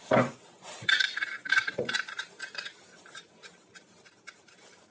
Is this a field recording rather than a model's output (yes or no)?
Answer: no